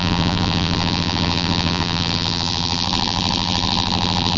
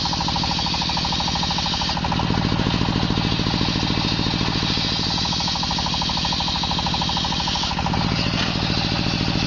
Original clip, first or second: second